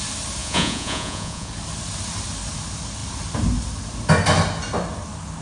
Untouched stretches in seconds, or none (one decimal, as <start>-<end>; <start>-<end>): 0.0-0.4; 1.5-5.4